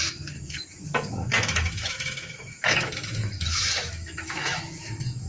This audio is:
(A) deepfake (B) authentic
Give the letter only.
A